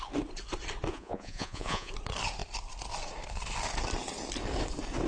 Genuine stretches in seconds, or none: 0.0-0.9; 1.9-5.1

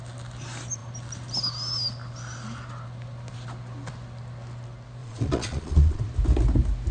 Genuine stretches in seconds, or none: 0.0-5.0; 6.0-6.9